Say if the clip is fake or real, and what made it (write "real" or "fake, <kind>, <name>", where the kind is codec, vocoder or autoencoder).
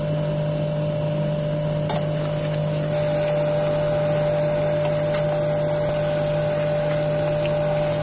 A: real